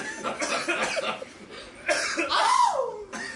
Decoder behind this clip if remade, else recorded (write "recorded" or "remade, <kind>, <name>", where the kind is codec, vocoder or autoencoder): recorded